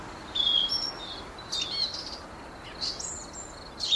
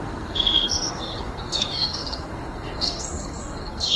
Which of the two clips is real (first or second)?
first